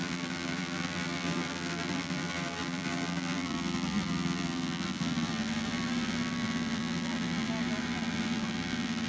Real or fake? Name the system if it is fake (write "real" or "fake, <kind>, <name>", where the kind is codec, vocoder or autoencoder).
fake, vocoder, BigVGAN v2